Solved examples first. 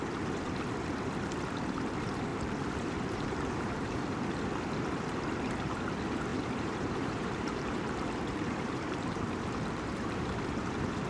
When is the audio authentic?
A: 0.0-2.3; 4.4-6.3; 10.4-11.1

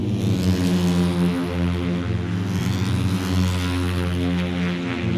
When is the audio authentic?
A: 0.0-5.2

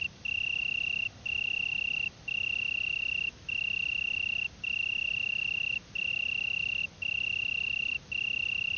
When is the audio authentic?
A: 0.0-8.8

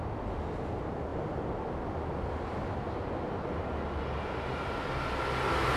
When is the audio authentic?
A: 0.0-5.8